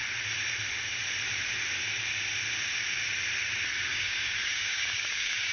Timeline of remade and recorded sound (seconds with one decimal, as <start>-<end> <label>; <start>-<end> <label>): 0.0-3.9 recorded; 3.9-5.5 remade